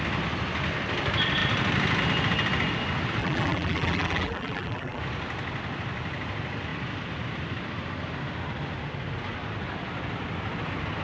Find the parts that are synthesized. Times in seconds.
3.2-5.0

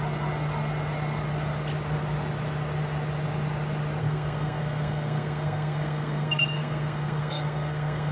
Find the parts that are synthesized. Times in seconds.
4.0-8.1